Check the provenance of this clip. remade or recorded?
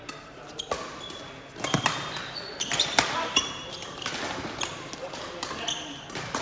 recorded